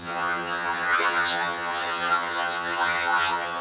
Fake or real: fake